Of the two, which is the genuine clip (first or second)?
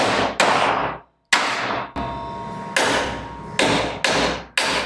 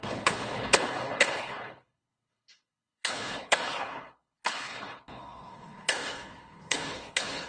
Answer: first